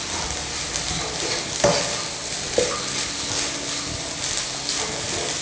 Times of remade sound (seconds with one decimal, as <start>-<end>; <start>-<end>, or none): none